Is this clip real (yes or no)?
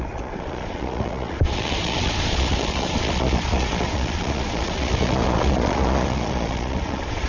no